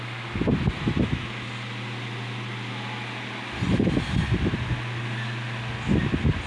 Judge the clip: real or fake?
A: real